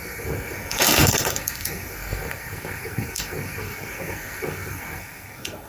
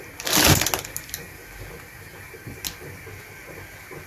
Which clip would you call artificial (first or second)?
first